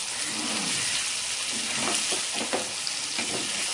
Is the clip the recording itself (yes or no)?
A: yes